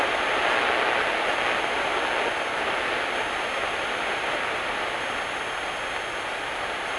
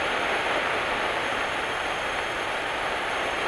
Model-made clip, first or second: second